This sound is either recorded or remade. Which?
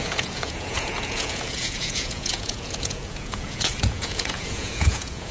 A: remade